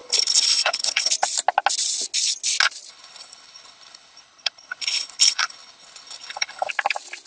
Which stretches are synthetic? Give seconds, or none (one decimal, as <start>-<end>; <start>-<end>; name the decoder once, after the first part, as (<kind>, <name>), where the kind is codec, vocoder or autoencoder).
0.0-1.1 (codec, HILCodec); 2.9-6.7